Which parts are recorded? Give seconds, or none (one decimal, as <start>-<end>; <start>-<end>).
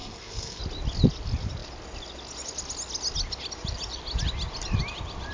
0.6-5.3